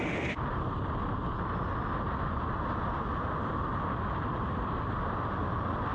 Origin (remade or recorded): recorded